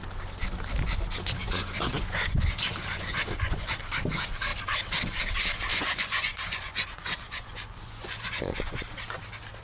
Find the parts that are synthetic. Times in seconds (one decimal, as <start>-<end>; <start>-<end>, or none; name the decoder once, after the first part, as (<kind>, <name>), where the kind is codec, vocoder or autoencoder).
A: 1.4-3.8 (vocoder, Vocos); 5.7-8.8